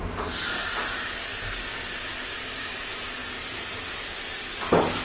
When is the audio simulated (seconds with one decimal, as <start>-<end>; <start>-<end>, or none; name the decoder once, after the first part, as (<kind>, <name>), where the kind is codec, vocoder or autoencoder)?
none